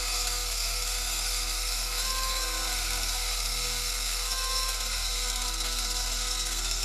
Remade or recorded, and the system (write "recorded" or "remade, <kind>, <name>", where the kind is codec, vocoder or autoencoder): remade, codec, SNAC